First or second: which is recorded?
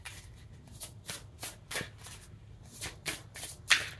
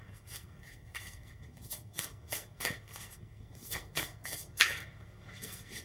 first